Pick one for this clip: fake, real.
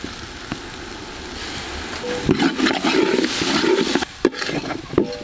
real